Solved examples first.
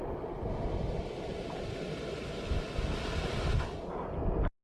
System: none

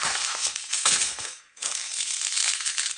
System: codec, SNAC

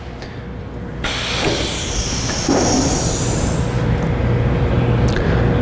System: none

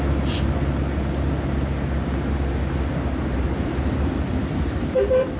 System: none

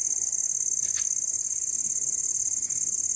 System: none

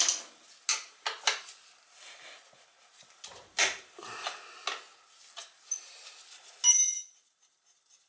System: none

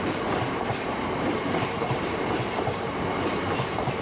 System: vocoder, BigVGAN v2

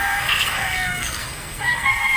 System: codec, SNAC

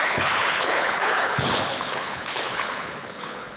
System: codec, HILCodec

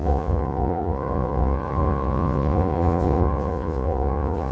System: vocoder, Vocos